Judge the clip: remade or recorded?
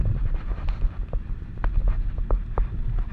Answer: recorded